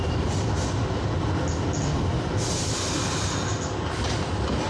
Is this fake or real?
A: real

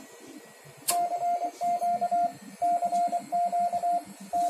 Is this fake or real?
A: real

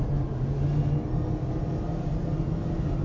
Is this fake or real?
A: real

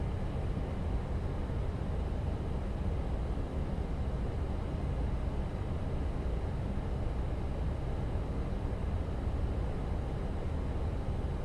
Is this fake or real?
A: real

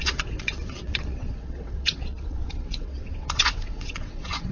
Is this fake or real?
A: fake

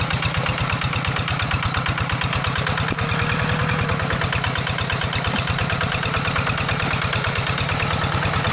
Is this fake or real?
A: real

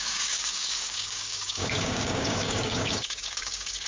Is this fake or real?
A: fake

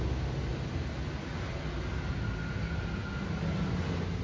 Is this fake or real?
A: real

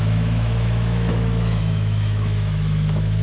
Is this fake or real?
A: fake